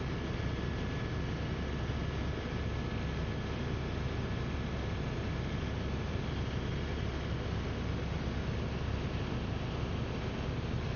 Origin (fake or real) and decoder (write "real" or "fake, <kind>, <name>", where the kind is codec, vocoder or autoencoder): real